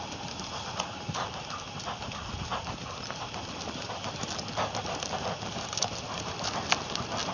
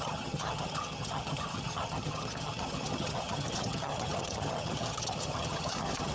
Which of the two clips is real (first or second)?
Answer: first